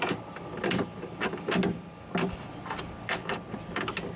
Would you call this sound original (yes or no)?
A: yes